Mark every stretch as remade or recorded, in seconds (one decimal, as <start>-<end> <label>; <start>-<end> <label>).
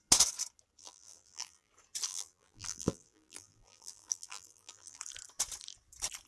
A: 0.0-0.8 recorded; 0.8-1.7 remade; 1.7-2.1 recorded; 2.1-5.0 remade; 5.0-6.3 recorded